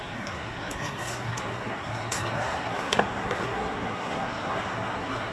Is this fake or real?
fake